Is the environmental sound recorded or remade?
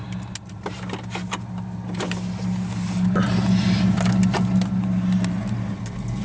recorded